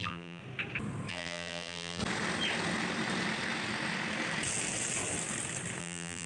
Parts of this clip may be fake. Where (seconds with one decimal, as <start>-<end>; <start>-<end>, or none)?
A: 0.0-0.4; 1.1-2.0; 5.8-6.3